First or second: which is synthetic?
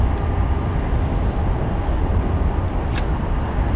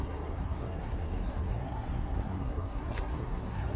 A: second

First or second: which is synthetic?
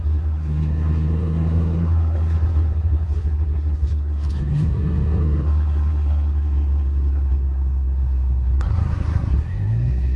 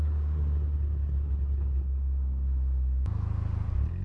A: first